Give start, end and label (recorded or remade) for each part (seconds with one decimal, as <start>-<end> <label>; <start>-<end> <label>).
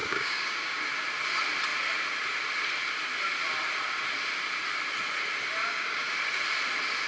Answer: 0.0-0.8 remade; 0.8-5.6 recorded; 5.6-6.1 remade; 6.1-7.1 recorded